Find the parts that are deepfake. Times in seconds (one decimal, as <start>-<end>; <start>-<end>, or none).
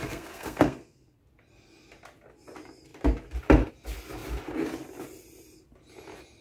0.0-1.2